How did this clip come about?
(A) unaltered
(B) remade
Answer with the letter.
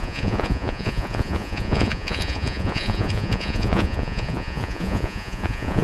B